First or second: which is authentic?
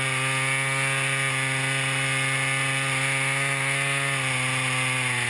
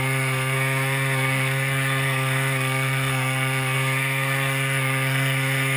first